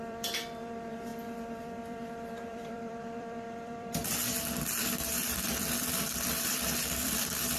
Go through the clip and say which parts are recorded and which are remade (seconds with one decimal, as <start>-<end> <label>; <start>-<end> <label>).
0.0-4.0 remade; 4.0-5.1 recorded; 5.1-7.6 remade